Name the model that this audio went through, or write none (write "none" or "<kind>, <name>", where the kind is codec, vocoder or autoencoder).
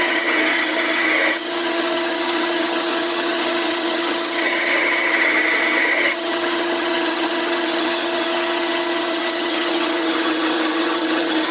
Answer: vocoder, HiFi-GAN